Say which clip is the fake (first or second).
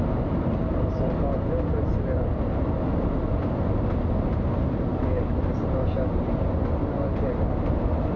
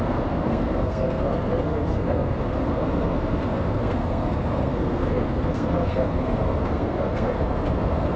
second